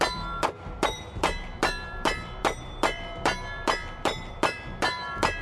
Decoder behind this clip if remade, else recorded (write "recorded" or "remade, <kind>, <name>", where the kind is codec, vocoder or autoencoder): remade, vocoder, BigVGAN v2